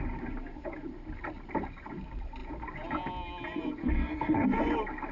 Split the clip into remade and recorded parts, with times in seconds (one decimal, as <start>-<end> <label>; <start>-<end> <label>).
0.0-3.8 recorded; 3.8-4.6 remade; 4.6-5.1 recorded